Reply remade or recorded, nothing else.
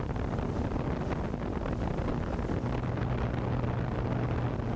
recorded